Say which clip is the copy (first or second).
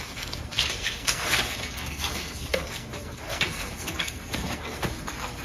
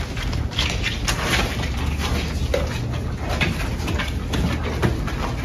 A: first